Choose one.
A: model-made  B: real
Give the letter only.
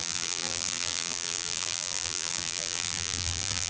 A